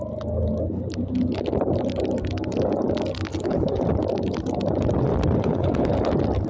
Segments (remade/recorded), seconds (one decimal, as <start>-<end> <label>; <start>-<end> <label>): 0.0-3.3 recorded; 3.3-3.8 remade; 3.8-5.4 recorded; 5.4-5.9 remade; 5.9-6.5 recorded